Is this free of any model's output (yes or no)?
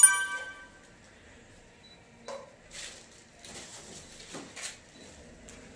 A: yes